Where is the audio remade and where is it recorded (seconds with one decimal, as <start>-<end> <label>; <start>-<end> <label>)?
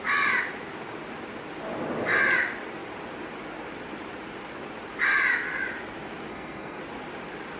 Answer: 0.0-6.3 recorded; 6.3-6.8 remade; 6.8-7.6 recorded